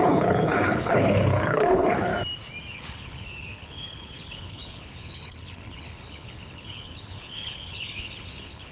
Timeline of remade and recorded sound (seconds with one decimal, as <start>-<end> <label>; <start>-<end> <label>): 0.0-2.1 remade; 2.1-2.7 recorded; 2.7-8.7 remade

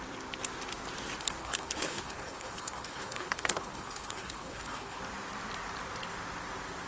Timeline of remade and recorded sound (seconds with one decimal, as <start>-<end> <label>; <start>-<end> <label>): 0.0-1.4 recorded; 1.4-5.0 remade; 5.0-6.9 recorded

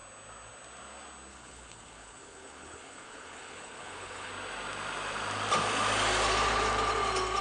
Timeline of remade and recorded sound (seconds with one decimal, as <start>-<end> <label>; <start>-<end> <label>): 0.0-1.3 recorded; 1.3-4.3 remade; 4.3-7.4 recorded

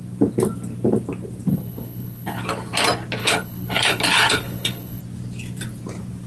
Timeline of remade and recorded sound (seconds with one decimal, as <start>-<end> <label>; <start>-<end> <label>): 0.0-1.5 recorded; 1.5-2.4 remade; 2.4-3.2 recorded; 3.2-5.0 remade; 5.0-6.3 recorded

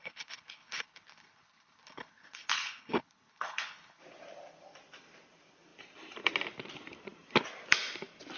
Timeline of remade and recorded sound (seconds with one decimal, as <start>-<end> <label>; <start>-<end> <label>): 0.0-4.0 remade; 4.0-8.4 recorded